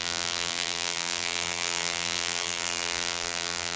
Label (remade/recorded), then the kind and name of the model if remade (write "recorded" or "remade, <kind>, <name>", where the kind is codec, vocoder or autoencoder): remade, vocoder, BigVGAN v2